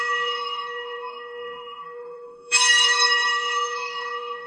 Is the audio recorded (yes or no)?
no